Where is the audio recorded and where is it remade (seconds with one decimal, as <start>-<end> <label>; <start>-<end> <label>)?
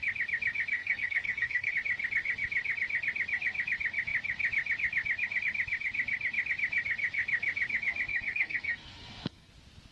0.0-0.8 recorded; 0.8-1.7 remade; 1.7-8.1 recorded; 8.1-9.5 remade; 9.5-9.9 recorded